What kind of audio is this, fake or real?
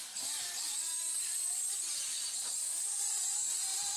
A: real